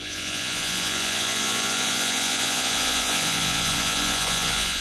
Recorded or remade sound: remade